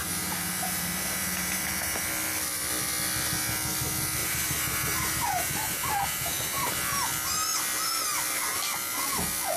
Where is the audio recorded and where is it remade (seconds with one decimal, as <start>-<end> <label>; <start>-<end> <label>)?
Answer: 0.0-2.0 remade; 2.0-4.2 recorded; 4.2-6.7 remade; 6.7-9.6 recorded